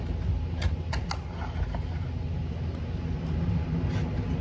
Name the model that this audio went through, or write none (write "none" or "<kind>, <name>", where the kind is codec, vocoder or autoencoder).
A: none